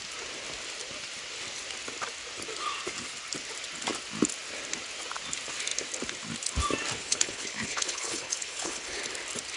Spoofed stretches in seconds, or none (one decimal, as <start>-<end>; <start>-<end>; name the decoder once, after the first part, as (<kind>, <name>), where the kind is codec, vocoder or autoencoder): 7.0-9.0 (codec, HILCodec)